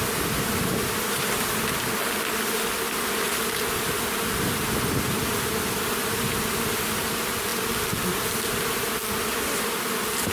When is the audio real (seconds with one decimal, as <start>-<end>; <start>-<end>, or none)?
0.0-10.3